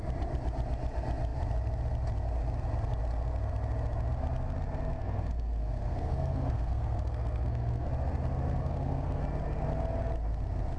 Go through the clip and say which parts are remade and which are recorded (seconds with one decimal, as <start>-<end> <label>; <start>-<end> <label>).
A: 0.0-5.0 recorded; 5.0-7.9 remade; 7.9-8.6 recorded; 8.6-9.2 remade; 9.2-10.8 recorded